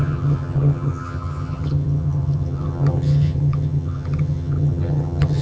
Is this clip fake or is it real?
fake